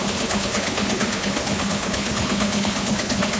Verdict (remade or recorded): remade